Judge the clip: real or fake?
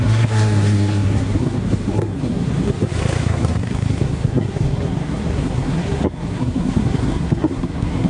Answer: fake